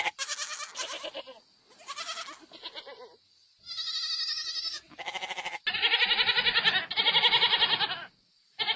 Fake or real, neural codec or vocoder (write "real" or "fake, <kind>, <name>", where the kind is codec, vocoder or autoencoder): real